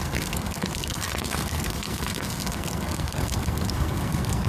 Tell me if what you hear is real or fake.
fake